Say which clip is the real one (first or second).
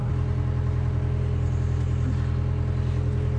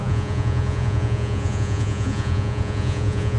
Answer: first